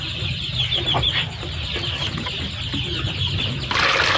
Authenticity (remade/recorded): recorded